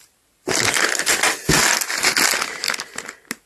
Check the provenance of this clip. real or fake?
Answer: real